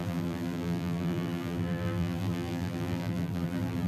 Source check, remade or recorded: remade